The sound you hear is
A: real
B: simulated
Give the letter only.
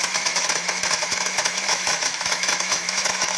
B